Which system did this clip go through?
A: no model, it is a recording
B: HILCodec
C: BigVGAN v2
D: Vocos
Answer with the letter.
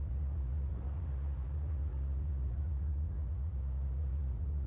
D